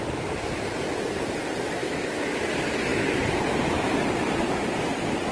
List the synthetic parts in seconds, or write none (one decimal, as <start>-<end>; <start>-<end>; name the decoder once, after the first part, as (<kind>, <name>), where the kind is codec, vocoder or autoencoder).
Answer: 1.8-2.3 (autoencoder, DAC-VAE)

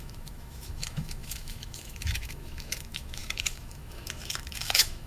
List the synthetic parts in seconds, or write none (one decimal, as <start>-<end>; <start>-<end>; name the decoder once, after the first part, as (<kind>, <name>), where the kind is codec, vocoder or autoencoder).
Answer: 0.0-5.1 (autoencoder, DAC-VAE)

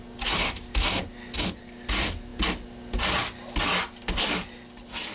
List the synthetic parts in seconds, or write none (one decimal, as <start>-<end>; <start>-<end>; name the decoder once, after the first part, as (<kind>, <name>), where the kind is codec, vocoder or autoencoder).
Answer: none

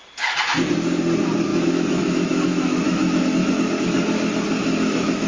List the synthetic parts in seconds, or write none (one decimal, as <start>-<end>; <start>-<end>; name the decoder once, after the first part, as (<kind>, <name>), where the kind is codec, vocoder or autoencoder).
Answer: 1.5-3.5 (autoencoder, DAC-VAE); 4.6-5.3

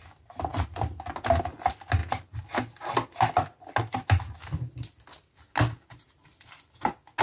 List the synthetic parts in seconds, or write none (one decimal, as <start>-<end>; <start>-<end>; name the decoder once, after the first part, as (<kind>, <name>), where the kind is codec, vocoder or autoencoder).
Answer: none

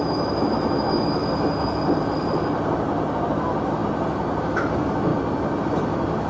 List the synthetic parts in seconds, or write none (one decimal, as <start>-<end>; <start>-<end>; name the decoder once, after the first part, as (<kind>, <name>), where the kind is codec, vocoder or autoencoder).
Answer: 0.0-1.2 (autoencoder, DAC-VAE); 3.3-3.8; 4.4-5.1; 5.6-6.3

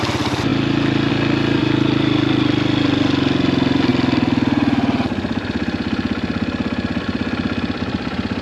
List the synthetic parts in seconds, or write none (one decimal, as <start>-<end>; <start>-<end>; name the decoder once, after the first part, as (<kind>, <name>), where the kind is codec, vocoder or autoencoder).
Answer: none

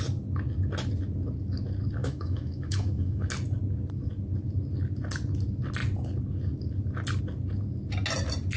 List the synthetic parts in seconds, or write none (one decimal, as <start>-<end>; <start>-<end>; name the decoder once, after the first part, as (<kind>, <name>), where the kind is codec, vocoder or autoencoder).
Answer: 2.0-3.3 (autoencoder, DAC-VAE)